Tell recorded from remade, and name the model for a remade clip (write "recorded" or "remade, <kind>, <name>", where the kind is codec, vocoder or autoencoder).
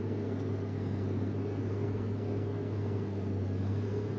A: remade, codec, SNAC